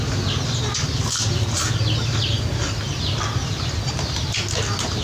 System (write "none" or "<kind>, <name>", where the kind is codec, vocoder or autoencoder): none